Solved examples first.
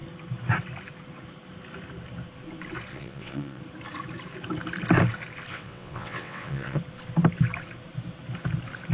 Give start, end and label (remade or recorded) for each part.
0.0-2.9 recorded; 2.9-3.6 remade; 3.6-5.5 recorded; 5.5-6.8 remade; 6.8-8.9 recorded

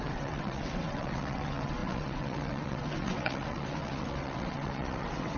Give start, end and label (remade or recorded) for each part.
0.0-5.4 remade